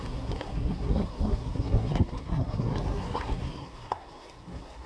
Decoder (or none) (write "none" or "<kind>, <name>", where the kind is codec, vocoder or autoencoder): codec, SNAC